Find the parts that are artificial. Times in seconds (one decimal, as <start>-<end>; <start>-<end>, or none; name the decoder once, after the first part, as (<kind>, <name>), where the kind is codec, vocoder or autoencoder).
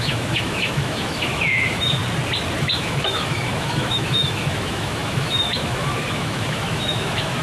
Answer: 0.0-2.0 (autoencoder, DAC-VAE); 2.6-7.4